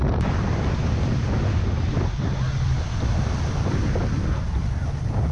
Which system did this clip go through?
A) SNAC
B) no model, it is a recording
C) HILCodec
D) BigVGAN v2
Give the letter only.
B